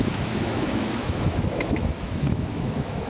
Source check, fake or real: fake